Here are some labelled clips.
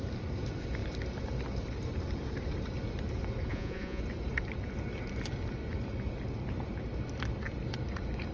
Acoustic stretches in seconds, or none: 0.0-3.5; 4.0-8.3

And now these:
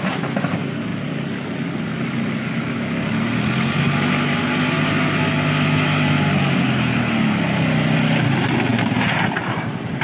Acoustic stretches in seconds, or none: 0.0-8.7

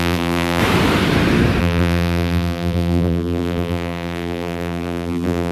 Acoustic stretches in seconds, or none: 0.6-1.6

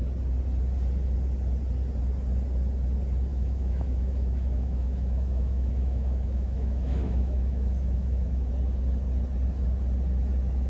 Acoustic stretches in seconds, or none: 0.0-3.3; 8.5-10.7

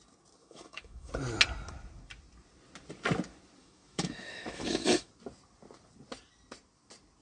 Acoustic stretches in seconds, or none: 0.0-0.4; 1.1-3.6; 5.1-7.2

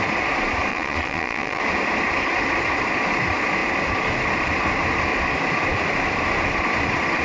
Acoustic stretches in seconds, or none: 0.0-0.7; 1.6-7.2

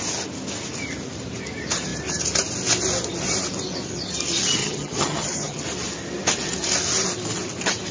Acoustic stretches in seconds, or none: 0.0-4.6; 5.6-7.9

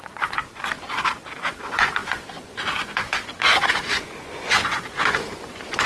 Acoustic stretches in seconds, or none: 0.4-1.4